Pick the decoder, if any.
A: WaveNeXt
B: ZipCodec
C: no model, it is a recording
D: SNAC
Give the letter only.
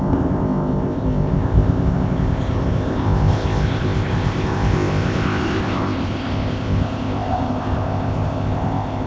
B